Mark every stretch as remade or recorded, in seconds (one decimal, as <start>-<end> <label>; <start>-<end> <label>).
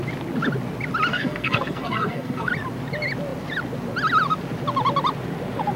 0.0-1.1 recorded; 1.1-2.5 remade; 2.5-5.8 recorded